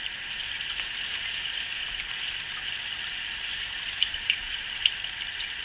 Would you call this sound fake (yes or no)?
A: no